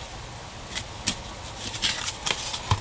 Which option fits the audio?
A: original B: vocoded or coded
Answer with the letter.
A